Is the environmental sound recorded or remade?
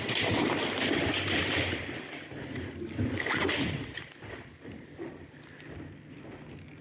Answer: recorded